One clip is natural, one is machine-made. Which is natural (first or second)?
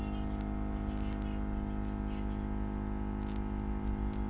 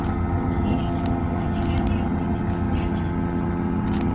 first